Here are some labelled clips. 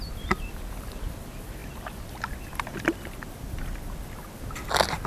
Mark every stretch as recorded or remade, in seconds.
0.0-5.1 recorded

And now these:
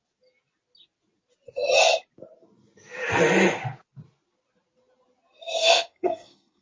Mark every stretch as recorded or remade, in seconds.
0.0-5.6 recorded; 5.6-6.6 remade